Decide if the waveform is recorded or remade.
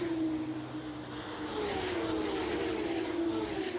recorded